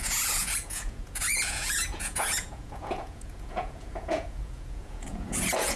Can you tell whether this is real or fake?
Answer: fake